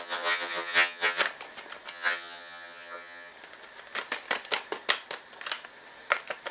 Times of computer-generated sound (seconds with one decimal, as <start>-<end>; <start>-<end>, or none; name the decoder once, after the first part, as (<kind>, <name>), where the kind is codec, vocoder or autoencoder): 0.0-1.2 (vocoder, HiFi-GAN); 1.9-3.3